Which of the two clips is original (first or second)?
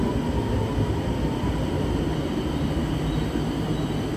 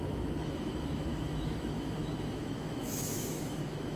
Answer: first